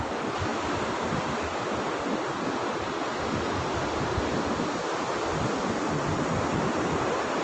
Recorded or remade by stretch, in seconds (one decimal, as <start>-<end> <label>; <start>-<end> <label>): 0.0-7.4 recorded